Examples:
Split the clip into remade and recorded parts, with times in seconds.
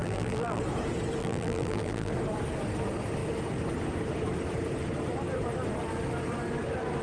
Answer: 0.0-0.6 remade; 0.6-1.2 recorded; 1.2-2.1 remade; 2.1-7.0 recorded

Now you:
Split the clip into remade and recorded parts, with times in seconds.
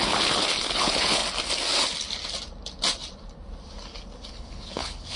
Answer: 0.0-1.2 remade; 1.2-4.3 recorded; 4.3-5.2 remade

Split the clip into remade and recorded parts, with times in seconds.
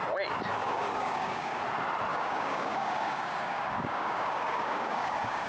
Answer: 0.0-0.6 recorded; 0.6-1.6 remade; 1.6-2.1 recorded; 2.1-5.5 remade